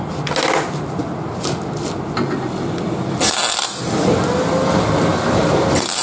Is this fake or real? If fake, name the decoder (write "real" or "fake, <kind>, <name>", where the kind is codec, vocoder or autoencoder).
real